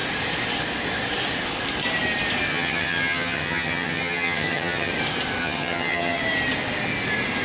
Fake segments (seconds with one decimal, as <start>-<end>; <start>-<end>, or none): 2.5-4.9; 5.4-6.2